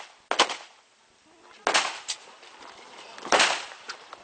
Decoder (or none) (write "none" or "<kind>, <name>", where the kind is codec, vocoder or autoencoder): none